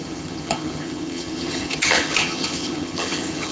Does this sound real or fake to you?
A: fake